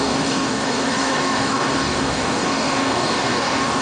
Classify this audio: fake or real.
fake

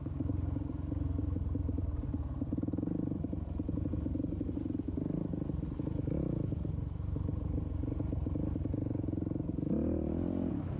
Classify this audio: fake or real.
real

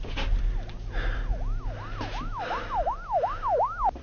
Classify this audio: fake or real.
real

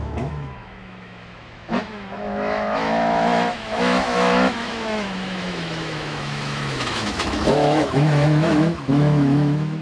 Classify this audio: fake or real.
fake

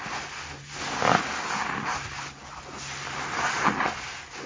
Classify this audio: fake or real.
real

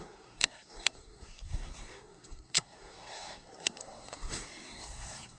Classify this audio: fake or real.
fake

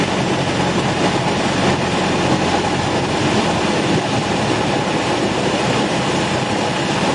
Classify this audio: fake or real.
real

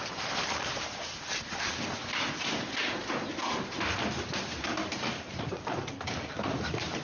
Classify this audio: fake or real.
real